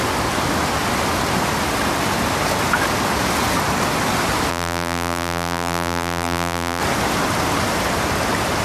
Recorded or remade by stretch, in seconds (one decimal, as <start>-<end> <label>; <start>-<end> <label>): 0.0-4.5 recorded; 4.5-6.8 remade; 6.8-8.6 recorded